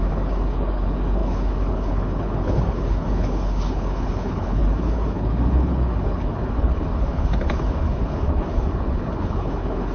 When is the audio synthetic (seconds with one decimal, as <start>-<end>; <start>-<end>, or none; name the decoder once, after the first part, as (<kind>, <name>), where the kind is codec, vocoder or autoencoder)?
0.0-9.9 (codec, HILCodec)